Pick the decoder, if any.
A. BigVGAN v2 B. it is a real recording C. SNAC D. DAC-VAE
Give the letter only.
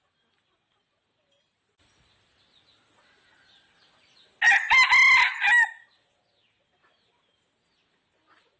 B